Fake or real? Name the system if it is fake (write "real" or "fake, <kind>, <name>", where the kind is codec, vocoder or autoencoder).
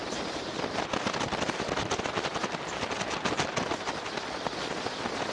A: real